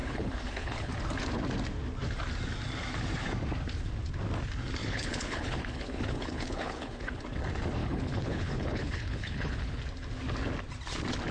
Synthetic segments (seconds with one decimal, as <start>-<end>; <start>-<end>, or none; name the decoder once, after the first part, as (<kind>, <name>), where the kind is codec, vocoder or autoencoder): 0.0-0.9 (codec, HILCodec); 4.8-7.2; 7.8-9.8